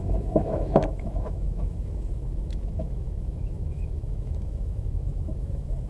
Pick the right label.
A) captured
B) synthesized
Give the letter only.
B